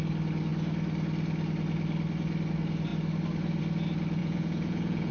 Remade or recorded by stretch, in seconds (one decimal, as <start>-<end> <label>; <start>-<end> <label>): 0.0-4.2 recorded; 4.2-5.1 remade